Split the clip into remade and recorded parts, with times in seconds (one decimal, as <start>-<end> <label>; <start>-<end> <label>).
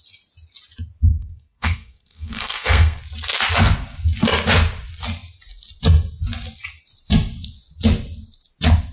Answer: 0.0-1.1 recorded; 1.1-3.0 remade; 3.0-8.9 recorded